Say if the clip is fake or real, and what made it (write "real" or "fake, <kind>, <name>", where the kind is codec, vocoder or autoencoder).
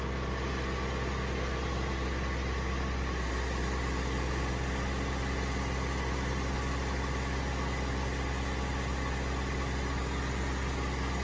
real